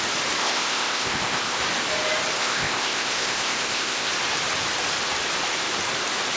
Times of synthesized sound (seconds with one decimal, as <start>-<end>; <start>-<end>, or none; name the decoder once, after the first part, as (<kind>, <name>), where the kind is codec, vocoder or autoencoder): 0.4-1.6 (codec, ZipCodec); 2.4-4.1